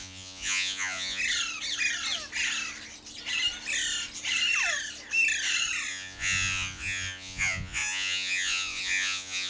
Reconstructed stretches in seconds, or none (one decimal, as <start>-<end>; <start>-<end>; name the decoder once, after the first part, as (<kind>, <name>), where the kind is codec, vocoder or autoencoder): 0.0-1.2 (vocoder, Vocos); 5.9-9.5